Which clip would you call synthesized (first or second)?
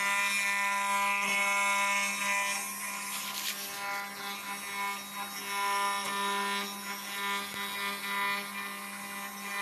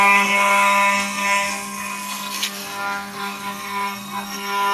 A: second